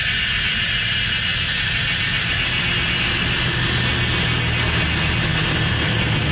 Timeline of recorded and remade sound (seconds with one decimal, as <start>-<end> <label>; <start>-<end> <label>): 0.0-6.3 recorded